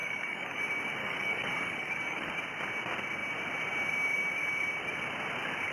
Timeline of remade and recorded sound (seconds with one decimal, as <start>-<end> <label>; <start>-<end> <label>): 0.0-0.6 remade; 0.6-1.0 recorded; 1.0-2.3 remade; 2.3-5.7 recorded